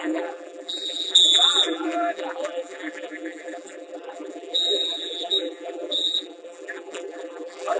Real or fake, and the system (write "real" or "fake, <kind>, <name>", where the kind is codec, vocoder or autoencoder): fake, vocoder, BigVGAN v2